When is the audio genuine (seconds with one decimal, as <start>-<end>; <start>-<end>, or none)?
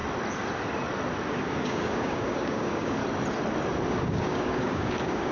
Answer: 0.0-1.3; 3.0-3.9